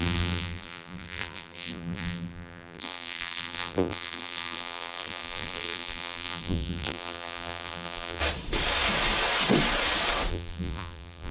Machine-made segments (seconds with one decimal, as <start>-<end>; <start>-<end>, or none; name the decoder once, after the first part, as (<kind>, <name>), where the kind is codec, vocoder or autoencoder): 0.0-8.2 (vocoder, BigVGAN v2); 10.3-11.3